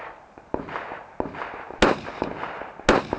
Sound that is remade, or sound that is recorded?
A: recorded